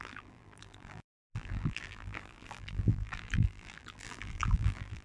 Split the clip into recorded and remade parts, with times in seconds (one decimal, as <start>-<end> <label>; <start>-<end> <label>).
0.0-5.0 remade